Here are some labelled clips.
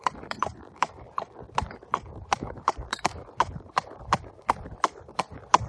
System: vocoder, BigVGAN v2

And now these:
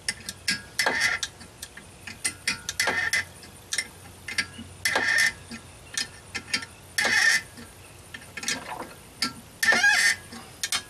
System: none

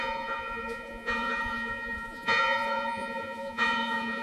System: vocoder, Vocos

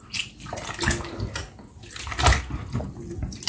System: none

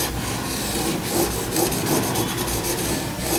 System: none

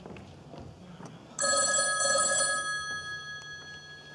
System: none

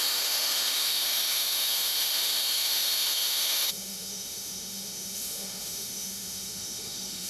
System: autoencoder, DAC-VAE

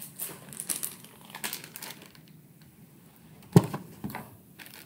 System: none